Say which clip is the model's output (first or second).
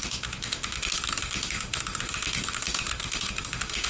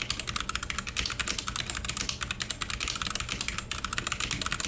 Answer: first